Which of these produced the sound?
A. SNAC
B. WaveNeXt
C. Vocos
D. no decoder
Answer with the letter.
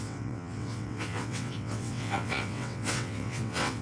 B